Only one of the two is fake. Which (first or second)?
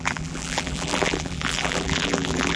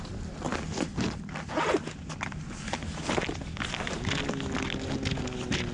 first